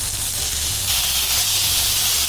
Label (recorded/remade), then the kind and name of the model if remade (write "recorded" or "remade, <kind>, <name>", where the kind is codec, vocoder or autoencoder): recorded